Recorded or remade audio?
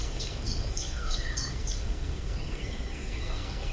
remade